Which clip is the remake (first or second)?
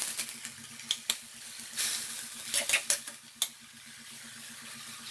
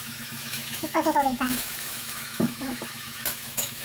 second